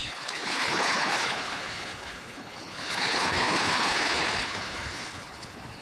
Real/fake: fake